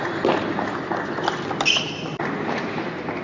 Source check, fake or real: real